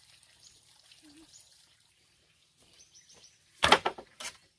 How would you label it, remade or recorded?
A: remade